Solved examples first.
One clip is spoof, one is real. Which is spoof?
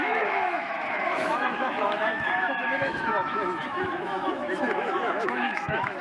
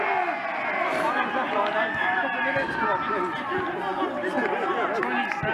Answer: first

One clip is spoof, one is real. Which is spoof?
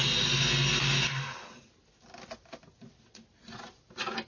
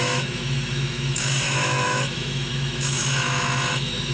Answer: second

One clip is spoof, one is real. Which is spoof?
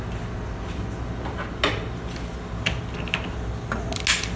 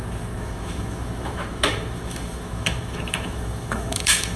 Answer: second